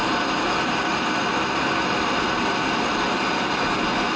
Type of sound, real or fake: real